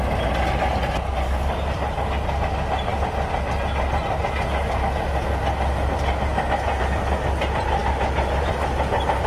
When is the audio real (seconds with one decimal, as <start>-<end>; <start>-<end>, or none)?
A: 0.0-9.3